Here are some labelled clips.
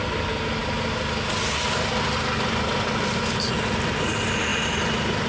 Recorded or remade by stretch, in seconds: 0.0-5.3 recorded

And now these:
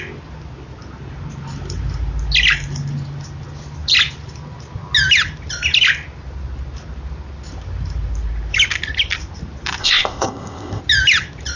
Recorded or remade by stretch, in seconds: 0.0-9.8 recorded; 9.8-10.8 remade; 10.8-11.6 recorded

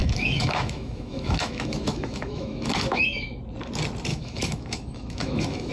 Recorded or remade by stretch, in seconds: 0.0-3.4 remade; 3.4-4.1 recorded; 4.1-5.7 remade

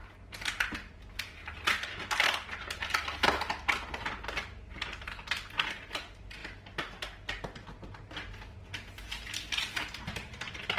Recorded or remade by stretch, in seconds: 0.0-10.8 recorded

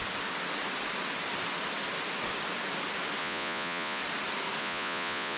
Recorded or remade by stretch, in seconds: 0.0-3.2 recorded; 3.2-4.0 remade; 4.0-4.6 recorded; 4.6-5.4 remade

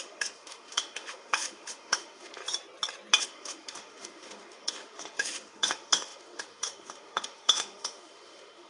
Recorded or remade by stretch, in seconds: 0.0-2.4 remade; 2.4-3.2 recorded; 3.2-8.7 remade

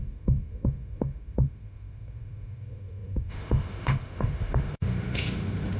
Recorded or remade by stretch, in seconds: 0.0-5.8 remade

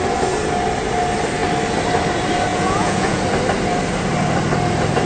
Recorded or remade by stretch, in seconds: 0.0-2.5 recorded; 2.5-3.2 remade; 3.2-5.1 recorded